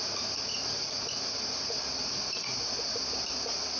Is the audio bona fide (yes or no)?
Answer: yes